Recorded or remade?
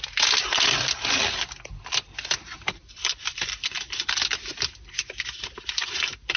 recorded